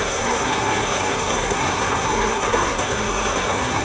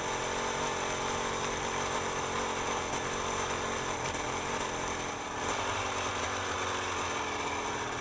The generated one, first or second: first